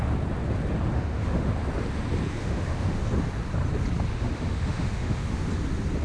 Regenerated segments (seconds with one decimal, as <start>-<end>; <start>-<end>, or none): 0.9-1.5; 2.4-3.0; 4.1-5.5